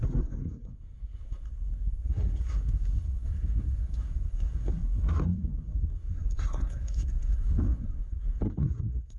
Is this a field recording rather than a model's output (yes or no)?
no